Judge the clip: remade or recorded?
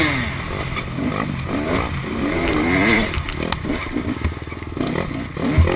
recorded